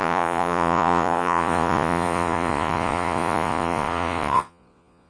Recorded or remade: remade